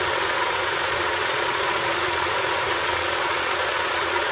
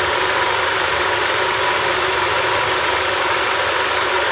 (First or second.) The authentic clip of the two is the second